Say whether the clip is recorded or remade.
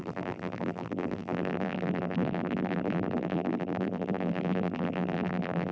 remade